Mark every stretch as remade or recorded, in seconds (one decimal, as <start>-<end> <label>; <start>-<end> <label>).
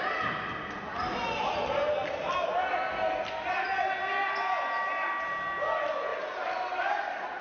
0.0-7.4 recorded